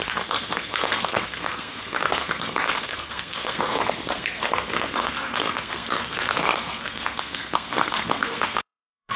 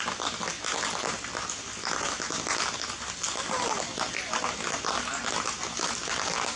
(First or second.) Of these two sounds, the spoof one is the first